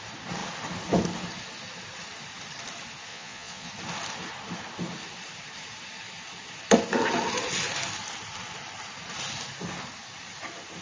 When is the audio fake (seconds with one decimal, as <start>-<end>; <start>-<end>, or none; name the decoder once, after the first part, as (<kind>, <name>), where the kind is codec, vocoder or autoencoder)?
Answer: 3.1-3.7 (vocoder, Vocos)